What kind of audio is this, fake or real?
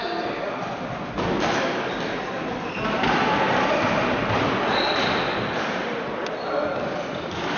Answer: real